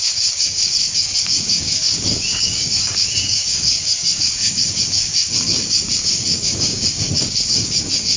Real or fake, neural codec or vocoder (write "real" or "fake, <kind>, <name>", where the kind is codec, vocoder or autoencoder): fake, codec, DAC